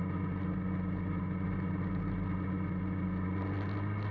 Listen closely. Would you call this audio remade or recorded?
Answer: recorded